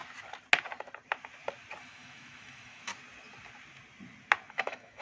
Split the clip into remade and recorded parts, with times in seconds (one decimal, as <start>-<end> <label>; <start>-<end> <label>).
0.0-1.8 recorded; 1.8-2.9 remade; 2.9-4.5 recorded; 4.5-5.0 remade

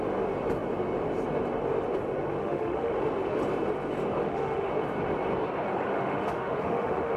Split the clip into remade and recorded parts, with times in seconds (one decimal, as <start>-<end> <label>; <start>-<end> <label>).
0.0-2.4 recorded; 2.4-2.9 remade; 2.9-4.2 recorded; 4.2-4.7 remade; 4.7-5.9 recorded; 5.9-7.2 remade

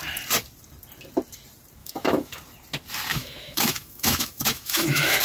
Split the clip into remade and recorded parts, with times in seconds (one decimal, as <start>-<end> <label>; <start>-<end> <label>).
0.0-1.8 recorded; 1.8-2.4 remade; 2.4-3.1 recorded; 3.1-5.2 remade

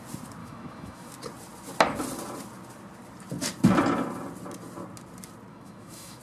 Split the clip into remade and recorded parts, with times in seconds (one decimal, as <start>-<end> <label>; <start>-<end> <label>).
0.0-0.4 recorded; 0.4-1.1 remade; 1.1-5.5 recorded; 5.5-6.2 remade

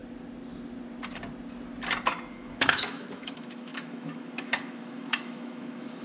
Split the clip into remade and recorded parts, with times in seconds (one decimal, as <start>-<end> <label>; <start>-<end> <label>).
0.0-2.3 recorded; 2.3-6.0 remade

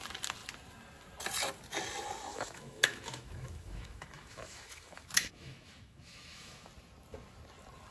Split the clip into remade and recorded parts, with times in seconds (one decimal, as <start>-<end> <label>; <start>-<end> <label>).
0.0-2.3 recorded; 2.3-6.7 remade; 6.7-7.9 recorded